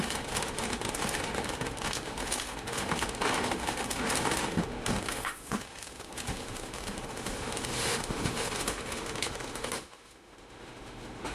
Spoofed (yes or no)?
yes